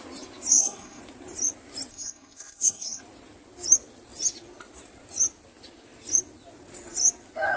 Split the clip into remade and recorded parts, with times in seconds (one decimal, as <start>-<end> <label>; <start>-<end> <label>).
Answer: 0.0-0.5 recorded; 0.5-1.0 remade; 1.0-1.9 recorded; 1.9-3.0 remade; 3.0-7.6 recorded

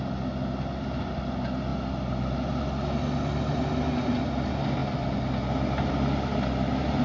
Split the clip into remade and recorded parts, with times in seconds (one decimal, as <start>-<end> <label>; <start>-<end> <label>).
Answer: 0.0-7.0 recorded

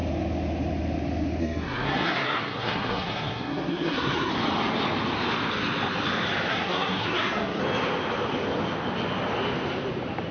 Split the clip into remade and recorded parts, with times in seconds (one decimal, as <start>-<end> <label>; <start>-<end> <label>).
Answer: 0.0-1.4 recorded; 1.4-4.3 remade; 4.3-6.5 recorded; 6.5-7.6 remade; 7.6-10.3 recorded